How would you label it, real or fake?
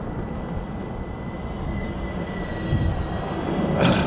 real